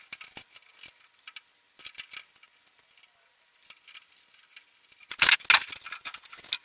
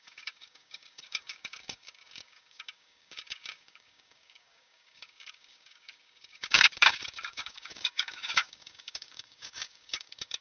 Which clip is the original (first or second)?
first